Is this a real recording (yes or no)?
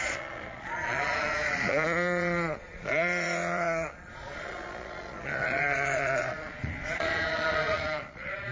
no